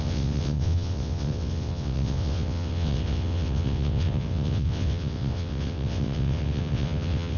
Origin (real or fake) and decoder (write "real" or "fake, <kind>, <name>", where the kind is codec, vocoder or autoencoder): fake, vocoder, WaveNeXt